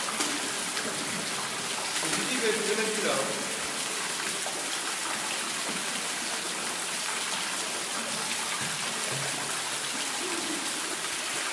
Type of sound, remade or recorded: recorded